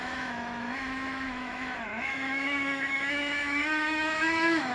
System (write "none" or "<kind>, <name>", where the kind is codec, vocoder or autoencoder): autoencoder, DAC-VAE